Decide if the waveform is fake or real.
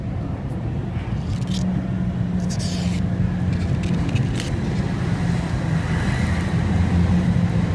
real